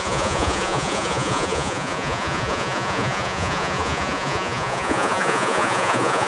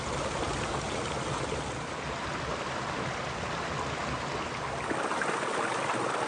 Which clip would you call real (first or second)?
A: second